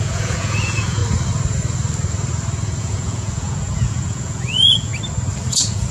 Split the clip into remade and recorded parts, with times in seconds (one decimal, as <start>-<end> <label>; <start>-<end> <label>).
0.0-1.0 remade; 1.0-2.8 recorded; 2.8-4.9 remade; 4.9-5.5 recorded; 5.5-5.9 remade